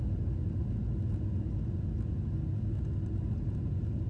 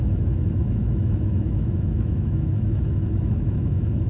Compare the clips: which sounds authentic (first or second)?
first